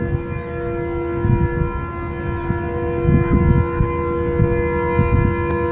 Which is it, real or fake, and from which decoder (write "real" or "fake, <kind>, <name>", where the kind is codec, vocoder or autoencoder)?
real